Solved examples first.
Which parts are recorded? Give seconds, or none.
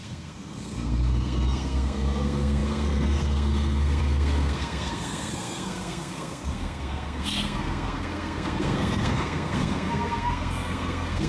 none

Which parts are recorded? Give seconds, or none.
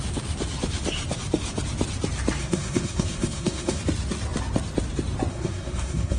0.0-2.4; 3.8-5.3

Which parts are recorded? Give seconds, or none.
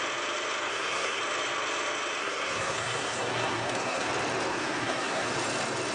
0.0-0.7; 1.2-2.2; 4.1-4.5; 5.3-5.9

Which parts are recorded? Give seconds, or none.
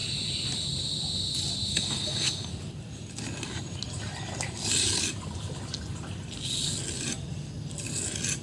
0.0-1.7; 2.5-8.4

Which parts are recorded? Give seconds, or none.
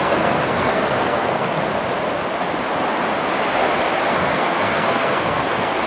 1.7-4.1